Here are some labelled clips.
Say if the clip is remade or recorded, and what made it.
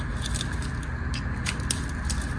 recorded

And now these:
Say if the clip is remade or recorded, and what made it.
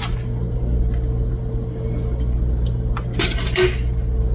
recorded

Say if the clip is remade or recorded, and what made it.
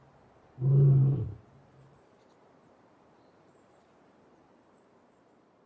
remade, vocoder, BigVGAN v2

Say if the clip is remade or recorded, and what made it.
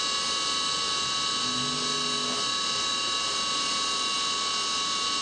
recorded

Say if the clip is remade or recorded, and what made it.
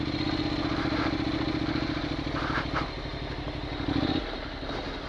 recorded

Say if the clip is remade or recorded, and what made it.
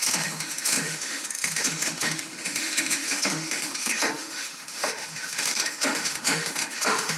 remade, autoencoder, DAC-VAE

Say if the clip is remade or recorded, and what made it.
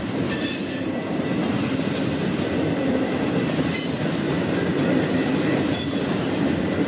remade, vocoder, BigVGAN v2